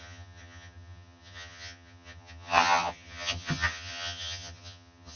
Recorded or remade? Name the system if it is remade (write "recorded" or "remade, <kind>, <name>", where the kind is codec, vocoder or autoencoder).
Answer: remade, vocoder, HiFi-GAN